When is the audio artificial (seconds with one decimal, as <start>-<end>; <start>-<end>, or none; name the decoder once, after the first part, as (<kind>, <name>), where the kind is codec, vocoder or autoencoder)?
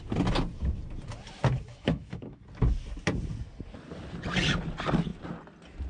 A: 1.7-2.4 (autoencoder, DAC-VAE)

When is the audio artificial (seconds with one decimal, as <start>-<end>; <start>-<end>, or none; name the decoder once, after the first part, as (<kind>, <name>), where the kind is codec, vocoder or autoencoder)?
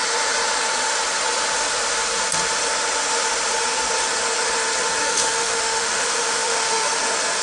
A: 5.0-7.0 (autoencoder, DAC-VAE)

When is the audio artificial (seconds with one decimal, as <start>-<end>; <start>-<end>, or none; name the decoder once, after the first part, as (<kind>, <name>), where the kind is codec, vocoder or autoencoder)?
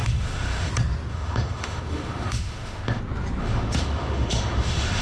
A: 0.0-0.7 (autoencoder, DAC-VAE); 1.1-3.0; 3.4-5.0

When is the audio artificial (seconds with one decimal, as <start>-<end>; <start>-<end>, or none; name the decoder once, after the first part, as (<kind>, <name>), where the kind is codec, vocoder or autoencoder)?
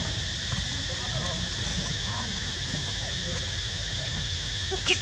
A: 1.7-5.0 (autoencoder, DAC-VAE)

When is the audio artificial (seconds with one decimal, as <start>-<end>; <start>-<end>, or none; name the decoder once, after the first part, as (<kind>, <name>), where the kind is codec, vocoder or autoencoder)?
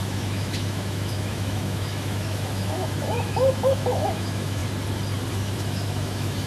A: 0.0-4.6 (autoencoder, DAC-VAE); 5.3-6.5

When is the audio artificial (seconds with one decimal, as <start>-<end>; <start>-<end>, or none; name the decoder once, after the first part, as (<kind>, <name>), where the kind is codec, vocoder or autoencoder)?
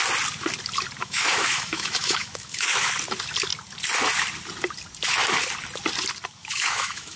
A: 1.0-2.9 (autoencoder, DAC-VAE); 6.4-7.2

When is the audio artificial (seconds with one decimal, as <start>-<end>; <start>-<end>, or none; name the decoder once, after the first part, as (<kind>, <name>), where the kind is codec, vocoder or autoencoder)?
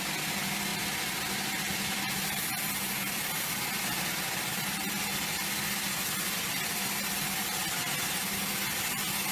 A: none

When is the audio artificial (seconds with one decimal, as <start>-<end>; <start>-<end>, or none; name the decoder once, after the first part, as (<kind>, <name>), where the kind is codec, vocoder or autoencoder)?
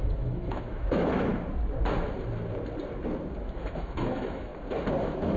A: 0.0-1.3 (autoencoder, DAC-VAE); 3.4-4.5; 5.0-5.4